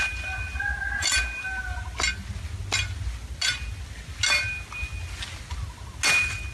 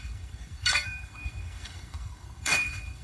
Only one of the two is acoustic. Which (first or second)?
first